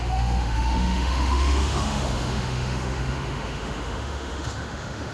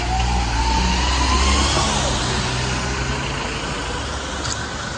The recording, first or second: second